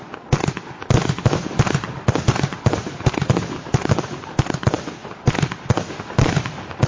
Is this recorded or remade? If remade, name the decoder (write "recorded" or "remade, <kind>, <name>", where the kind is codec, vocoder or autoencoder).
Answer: recorded